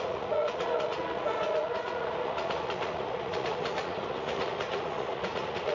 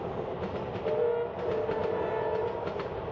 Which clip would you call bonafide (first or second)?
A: second